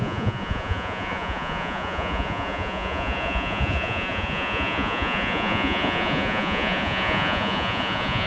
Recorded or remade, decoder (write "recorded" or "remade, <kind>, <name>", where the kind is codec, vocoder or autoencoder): remade, vocoder, Vocos